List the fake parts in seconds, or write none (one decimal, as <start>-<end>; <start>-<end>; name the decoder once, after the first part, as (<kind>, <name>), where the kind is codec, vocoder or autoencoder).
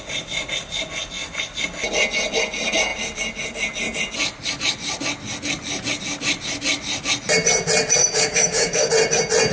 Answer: 8.0-8.9 (codec, DAC)